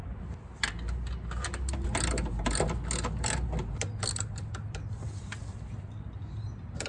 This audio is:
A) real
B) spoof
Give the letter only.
A